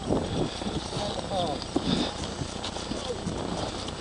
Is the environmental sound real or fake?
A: real